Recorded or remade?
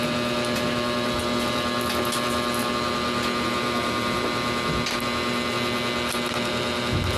recorded